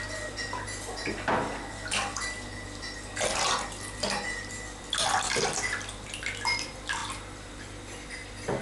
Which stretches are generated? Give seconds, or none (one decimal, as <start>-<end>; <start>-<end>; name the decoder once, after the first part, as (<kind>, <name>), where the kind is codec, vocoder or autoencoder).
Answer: none